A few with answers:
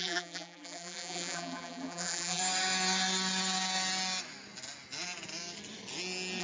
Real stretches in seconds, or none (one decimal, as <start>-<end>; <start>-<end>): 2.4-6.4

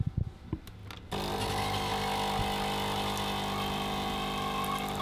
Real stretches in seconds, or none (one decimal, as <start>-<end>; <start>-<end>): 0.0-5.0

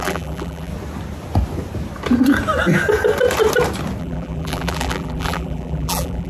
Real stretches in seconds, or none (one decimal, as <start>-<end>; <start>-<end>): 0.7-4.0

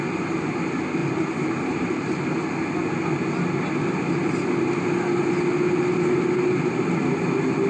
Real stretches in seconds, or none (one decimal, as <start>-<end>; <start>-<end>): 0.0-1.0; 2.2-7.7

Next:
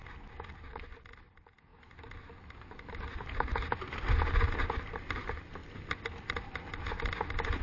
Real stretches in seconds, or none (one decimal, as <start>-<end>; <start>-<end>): 0.5-5.6; 6.4-7.6

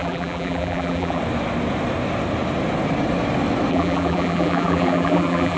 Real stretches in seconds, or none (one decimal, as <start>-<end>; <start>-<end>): 1.2-3.7

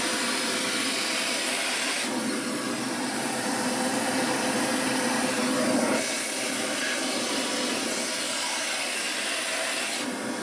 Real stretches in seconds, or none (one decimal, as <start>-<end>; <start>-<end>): 7.8-8.5

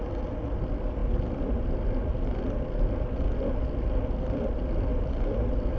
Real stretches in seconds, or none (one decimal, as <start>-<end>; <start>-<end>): 0.0-5.8